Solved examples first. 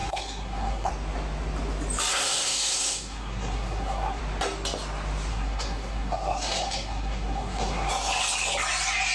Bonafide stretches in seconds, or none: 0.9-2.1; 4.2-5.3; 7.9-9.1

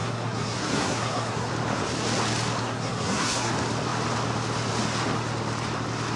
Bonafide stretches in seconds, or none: 1.5-2.6; 3.5-6.2